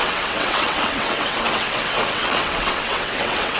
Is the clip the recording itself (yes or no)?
no